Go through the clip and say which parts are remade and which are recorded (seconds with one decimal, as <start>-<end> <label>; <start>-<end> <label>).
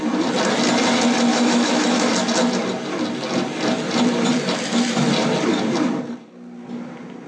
0.0-1.3 recorded; 1.3-2.1 remade; 2.1-7.3 recorded